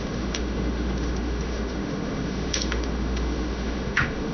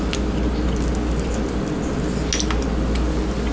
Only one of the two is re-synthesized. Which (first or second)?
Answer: first